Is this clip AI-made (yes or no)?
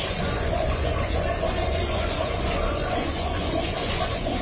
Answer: yes